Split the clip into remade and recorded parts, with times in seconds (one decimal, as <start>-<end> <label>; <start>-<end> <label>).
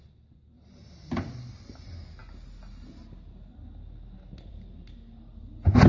0.0-5.9 recorded